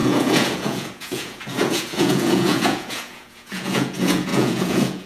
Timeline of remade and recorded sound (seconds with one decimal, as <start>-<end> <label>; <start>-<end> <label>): 0.0-5.1 remade